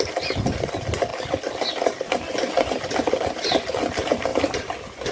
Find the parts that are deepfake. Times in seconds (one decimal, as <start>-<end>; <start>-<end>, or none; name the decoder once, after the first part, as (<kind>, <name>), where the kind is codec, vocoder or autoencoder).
0.0-4.3 (vocoder, BigVGAN v2)

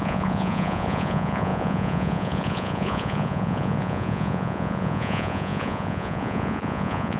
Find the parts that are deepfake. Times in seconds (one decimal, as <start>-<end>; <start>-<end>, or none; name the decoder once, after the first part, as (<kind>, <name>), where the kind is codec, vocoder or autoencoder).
0.0-7.2 (vocoder, Vocos)

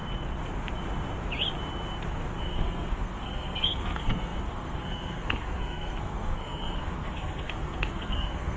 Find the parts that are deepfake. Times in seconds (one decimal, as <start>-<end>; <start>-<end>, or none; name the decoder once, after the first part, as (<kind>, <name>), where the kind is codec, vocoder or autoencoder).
2.4-8.6 (codec, SNAC)